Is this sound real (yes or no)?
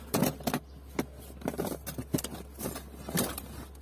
yes